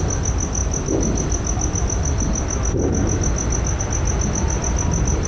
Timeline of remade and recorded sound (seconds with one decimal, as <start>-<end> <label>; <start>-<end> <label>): 0.0-5.3 recorded